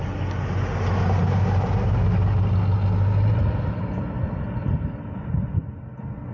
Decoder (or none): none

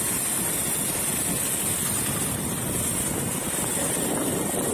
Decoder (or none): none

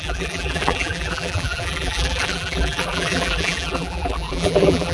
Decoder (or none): vocoder, BigVGAN v2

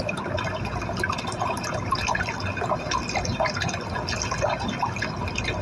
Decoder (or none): none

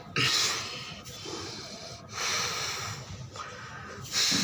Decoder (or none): none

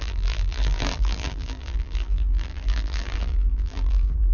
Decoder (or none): vocoder, BigVGAN v2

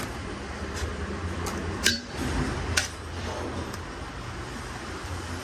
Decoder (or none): vocoder, BigVGAN v2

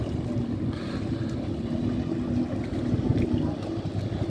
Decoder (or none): none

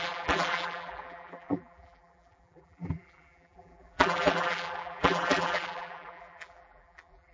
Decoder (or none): vocoder, BigVGAN v2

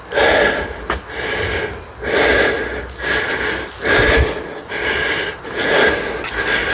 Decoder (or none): none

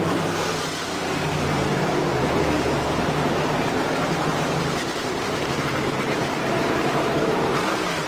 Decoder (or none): vocoder, BigVGAN v2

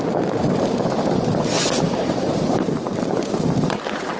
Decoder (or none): vocoder, BigVGAN v2